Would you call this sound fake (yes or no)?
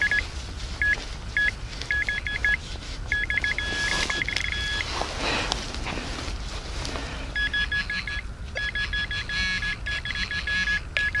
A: no